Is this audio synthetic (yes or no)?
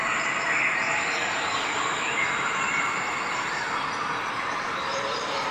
yes